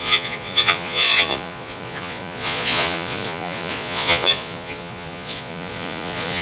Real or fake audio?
fake